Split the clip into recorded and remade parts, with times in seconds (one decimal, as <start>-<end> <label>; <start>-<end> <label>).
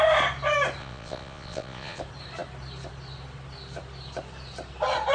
0.0-0.8 recorded; 0.8-2.0 remade; 2.0-5.1 recorded